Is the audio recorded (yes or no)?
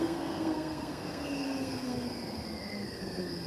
no